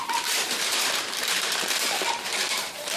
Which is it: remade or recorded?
remade